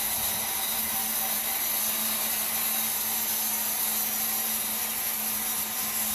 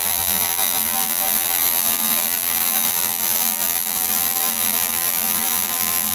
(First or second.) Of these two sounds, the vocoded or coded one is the second